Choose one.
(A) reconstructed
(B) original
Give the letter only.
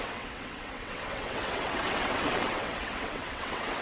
A